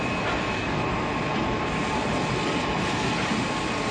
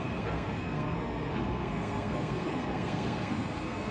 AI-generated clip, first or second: second